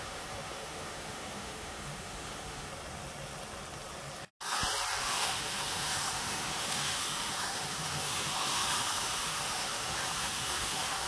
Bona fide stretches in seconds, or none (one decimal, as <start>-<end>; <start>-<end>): 2.7-5.0